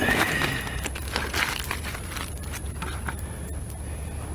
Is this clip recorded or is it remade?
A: recorded